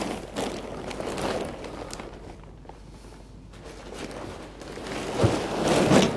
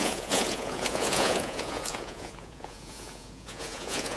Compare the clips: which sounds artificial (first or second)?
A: second